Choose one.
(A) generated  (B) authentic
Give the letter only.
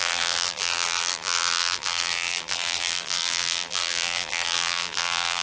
A